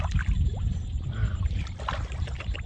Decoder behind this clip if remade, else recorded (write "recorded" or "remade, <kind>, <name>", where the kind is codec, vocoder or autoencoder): remade, vocoder, BigVGAN v2